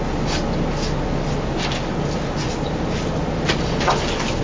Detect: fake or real real